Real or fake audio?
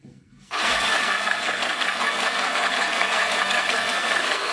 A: fake